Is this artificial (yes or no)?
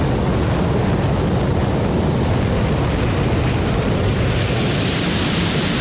no